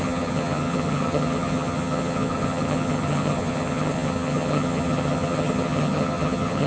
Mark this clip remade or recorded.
remade